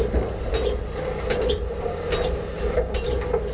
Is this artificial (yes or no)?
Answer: no